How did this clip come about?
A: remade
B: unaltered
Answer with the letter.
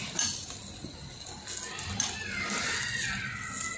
B